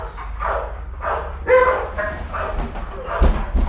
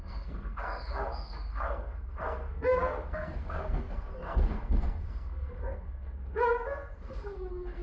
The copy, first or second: second